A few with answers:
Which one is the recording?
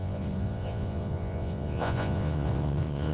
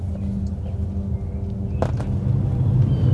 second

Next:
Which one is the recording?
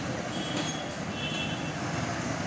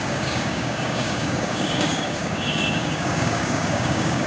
first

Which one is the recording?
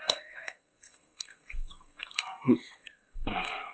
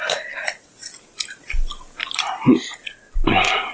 second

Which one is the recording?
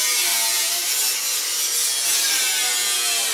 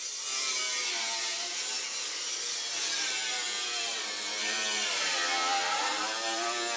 first